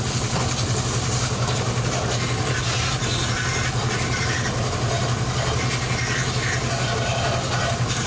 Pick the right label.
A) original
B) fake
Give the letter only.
A